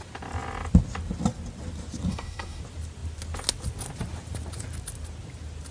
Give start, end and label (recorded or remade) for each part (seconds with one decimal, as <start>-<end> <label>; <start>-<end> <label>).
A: 0.0-2.1 recorded; 2.1-2.6 remade; 2.6-5.7 recorded